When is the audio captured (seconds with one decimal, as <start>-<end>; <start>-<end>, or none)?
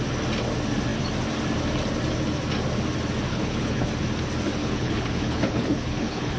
0.0-3.3; 3.9-4.6